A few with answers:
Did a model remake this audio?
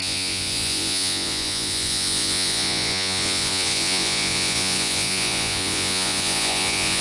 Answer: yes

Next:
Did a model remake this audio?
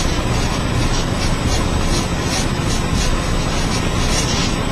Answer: no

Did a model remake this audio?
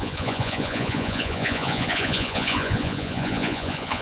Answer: yes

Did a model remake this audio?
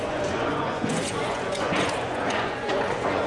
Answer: yes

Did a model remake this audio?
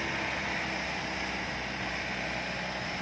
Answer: no